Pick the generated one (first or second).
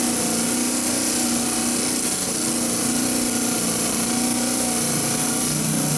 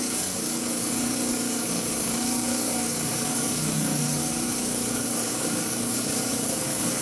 second